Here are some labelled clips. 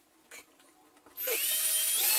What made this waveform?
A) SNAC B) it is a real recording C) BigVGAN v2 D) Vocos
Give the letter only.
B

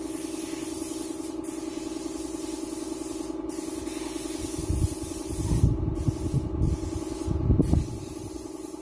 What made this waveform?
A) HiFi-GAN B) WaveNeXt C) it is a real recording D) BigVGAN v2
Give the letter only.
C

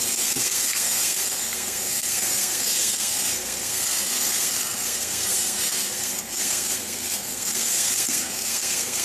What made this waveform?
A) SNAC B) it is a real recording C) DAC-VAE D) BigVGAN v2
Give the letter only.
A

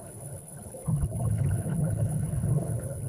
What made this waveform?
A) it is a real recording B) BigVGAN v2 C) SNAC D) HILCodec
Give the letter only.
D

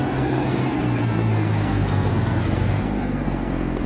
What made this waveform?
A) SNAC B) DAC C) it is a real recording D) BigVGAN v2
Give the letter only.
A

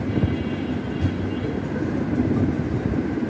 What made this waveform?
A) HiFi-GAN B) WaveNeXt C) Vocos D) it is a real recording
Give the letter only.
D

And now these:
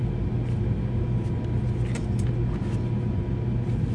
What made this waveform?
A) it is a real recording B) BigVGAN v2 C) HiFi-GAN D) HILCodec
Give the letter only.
A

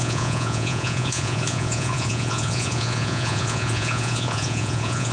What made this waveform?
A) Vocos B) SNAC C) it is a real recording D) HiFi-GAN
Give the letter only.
A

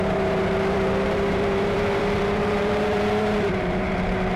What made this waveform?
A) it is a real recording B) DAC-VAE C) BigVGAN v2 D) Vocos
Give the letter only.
C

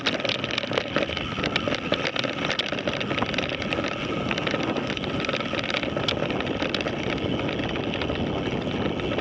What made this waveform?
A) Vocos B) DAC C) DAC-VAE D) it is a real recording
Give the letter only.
D